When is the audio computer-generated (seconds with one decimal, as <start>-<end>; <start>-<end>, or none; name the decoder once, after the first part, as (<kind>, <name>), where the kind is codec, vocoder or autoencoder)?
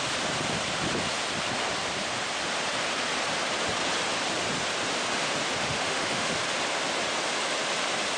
5.6-6.3 (autoencoder, DAC-VAE)